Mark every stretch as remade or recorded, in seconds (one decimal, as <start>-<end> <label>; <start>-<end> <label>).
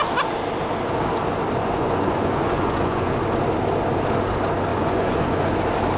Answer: 0.0-1.6 recorded; 1.6-3.2 remade; 3.2-4.7 recorded; 4.7-5.5 remade; 5.5-6.0 recorded